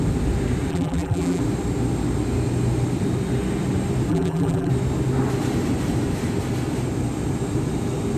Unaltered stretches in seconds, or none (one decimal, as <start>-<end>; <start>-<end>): 0.0-0.7; 1.4-4.1; 4.7-8.2